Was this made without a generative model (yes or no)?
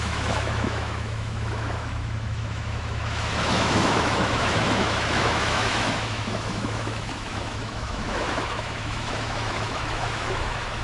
no